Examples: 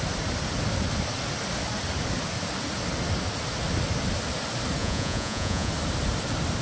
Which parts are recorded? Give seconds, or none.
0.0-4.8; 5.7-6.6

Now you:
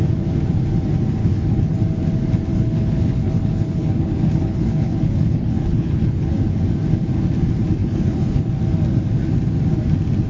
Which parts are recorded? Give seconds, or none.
0.0-1.2; 1.8-2.5; 6.3-7.8; 8.5-10.3

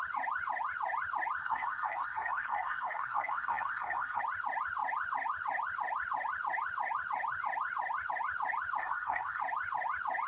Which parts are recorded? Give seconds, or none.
0.0-1.4; 4.2-8.8; 9.4-10.3

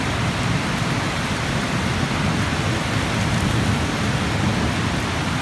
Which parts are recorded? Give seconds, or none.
2.5-5.4

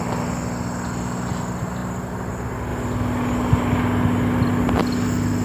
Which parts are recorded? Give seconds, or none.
0.0-1.8; 2.3-2.7; 4.8-5.4